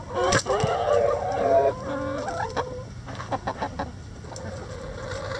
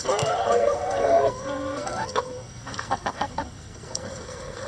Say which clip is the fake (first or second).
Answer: second